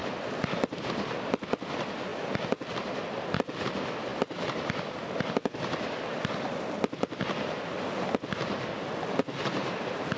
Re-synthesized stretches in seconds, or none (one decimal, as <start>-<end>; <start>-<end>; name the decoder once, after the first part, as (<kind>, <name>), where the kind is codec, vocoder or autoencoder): 4.1-6.6 (vocoder, BigVGAN v2)